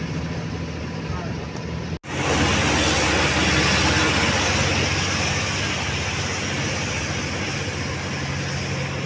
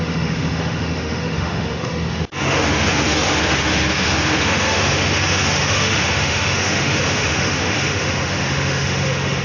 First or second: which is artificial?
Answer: second